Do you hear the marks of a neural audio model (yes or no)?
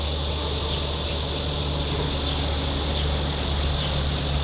no